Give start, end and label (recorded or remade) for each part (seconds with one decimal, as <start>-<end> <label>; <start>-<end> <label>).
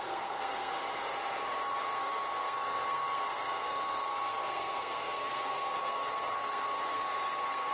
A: 0.0-0.7 remade; 0.7-1.8 recorded; 1.8-7.7 remade